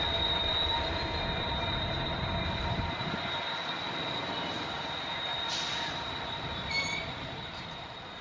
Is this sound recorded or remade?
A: remade